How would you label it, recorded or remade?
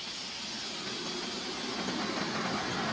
recorded